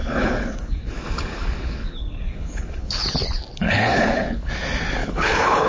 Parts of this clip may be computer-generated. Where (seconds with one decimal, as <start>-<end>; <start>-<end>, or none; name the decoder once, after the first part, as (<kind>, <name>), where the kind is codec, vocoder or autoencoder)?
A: 0.0-2.8 (codec, HILCodec); 3.5-4.5; 5.0-5.7